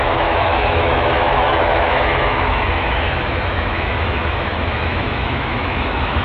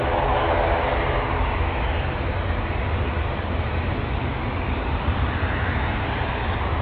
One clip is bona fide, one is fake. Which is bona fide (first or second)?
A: second